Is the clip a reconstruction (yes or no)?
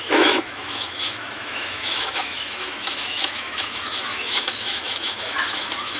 yes